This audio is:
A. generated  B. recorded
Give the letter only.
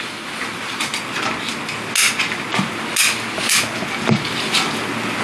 B